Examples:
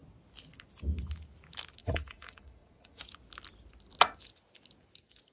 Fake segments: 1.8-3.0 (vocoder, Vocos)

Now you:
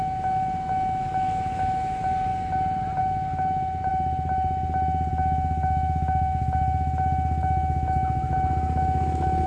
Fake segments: 0.0-2.3 (autoencoder, DAC-VAE); 3.0-3.9; 5.1-9.5

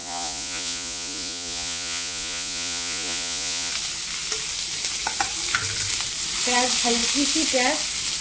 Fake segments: 0.0-3.7 (vocoder, Vocos)

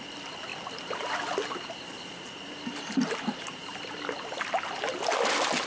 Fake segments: none

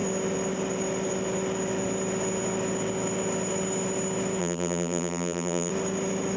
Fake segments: 4.4-5.7 (vocoder, BigVGAN v2)

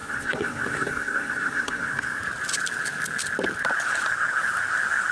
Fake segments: 0.0-2.2 (codec, SNAC)